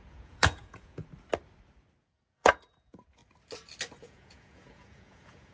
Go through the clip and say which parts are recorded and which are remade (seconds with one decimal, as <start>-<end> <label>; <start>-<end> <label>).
0.0-1.0 remade; 1.0-2.0 recorded; 2.0-3.2 remade; 3.2-4.0 recorded; 4.0-5.5 remade